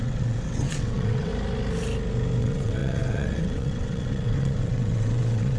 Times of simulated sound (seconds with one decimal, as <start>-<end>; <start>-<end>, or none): 0.0-1.3; 2.4-5.6